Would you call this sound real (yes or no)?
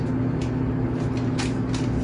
yes